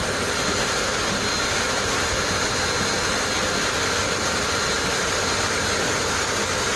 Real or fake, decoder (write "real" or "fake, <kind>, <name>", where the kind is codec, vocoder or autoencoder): real